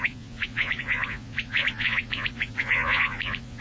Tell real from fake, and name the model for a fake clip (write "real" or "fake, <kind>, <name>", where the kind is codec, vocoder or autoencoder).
fake, vocoder, Vocos